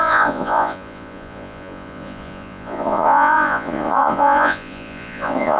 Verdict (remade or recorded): remade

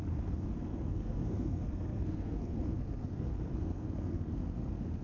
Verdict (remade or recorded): remade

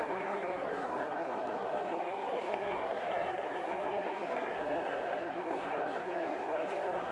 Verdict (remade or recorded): remade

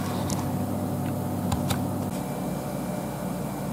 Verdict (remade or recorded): recorded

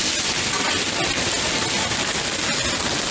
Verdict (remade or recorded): recorded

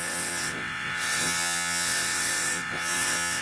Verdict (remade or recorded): remade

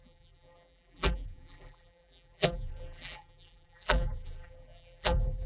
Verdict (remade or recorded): remade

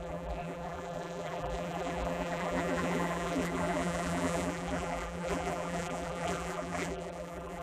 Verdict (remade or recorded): remade